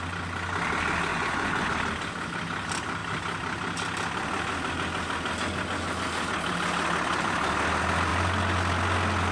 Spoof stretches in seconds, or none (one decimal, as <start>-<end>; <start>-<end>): 1.1-1.7